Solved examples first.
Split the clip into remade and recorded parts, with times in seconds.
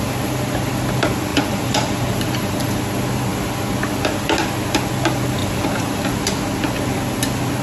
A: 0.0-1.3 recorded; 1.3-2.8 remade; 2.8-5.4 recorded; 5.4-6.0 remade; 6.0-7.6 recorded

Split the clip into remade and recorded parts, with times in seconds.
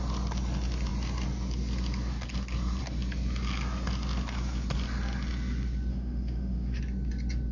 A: 0.0-5.9 recorded; 5.9-6.8 remade; 6.8-7.5 recorded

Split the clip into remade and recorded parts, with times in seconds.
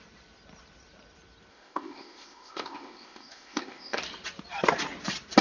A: 0.0-1.5 recorded; 1.5-4.0 remade; 4.0-5.4 recorded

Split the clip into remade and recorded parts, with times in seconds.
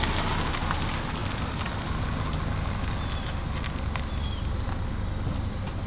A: 0.0-5.9 recorded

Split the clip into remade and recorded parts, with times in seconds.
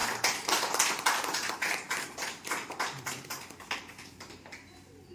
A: 0.0-5.1 recorded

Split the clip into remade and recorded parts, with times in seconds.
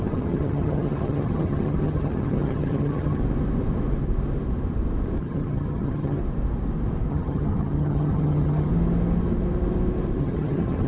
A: 0.0-3.2 remade; 3.2-5.2 recorded; 5.2-6.2 remade; 6.2-7.1 recorded; 7.1-8.7 remade; 8.7-10.2 recorded; 10.2-10.9 remade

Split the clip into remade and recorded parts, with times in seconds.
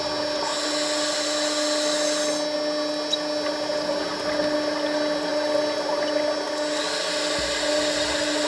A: 0.0-8.5 recorded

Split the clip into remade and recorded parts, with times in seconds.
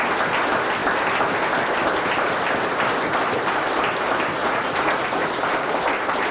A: 0.0-4.4 recorded; 4.4-5.3 remade; 5.3-6.3 recorded